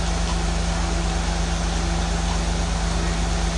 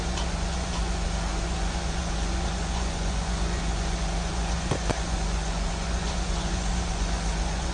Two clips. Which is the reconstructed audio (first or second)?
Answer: second